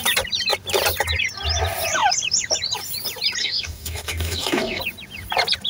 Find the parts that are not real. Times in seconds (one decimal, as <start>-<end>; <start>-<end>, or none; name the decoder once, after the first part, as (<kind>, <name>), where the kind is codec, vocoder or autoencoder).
3.4-4.8 (codec, DAC)